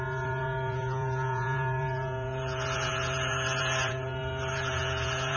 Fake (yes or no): yes